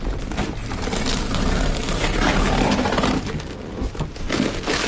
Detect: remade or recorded recorded